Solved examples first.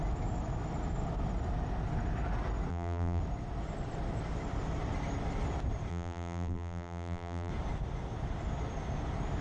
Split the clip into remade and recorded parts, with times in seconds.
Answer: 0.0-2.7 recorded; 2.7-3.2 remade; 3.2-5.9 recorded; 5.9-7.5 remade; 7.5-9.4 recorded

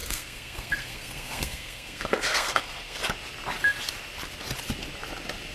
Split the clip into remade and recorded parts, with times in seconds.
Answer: 0.0-3.0 remade; 3.0-5.5 recorded

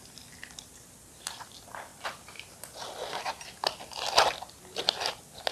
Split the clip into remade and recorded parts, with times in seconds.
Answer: 0.0-5.5 recorded